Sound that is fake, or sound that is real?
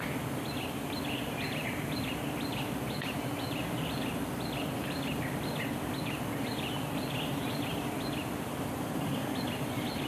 real